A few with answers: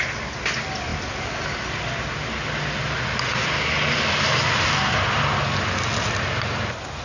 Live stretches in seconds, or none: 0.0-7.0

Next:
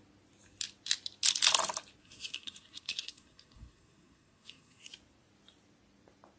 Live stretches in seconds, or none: 0.0-2.0; 4.9-6.4